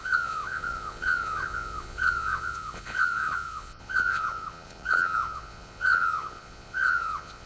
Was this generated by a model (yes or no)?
yes